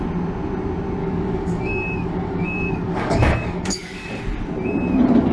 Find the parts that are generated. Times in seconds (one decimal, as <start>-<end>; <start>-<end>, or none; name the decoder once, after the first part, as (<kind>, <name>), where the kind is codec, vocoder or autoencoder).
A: 1.0-4.2 (codec, DAC)